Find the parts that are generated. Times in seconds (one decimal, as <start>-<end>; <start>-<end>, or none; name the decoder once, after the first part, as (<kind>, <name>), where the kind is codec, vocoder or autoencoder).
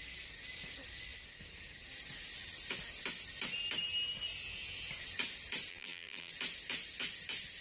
5.7-6.3 (vocoder, BigVGAN v2)